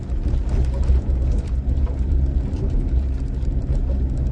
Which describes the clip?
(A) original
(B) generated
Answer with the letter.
A